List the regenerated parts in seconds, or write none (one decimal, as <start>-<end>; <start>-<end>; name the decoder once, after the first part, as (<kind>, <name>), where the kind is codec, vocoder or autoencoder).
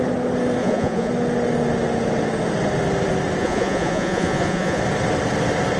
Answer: 0.6-1.1 (vocoder, Vocos); 3.4-4.8